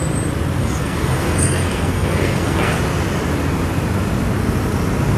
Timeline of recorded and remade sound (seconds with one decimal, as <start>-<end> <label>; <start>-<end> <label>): 0.0-0.6 recorded; 0.6-2.8 remade; 2.8-5.2 recorded